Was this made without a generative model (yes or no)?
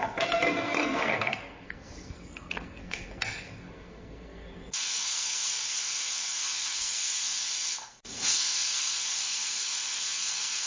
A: no